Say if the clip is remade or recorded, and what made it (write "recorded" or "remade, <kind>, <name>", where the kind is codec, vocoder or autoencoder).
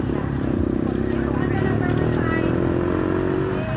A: recorded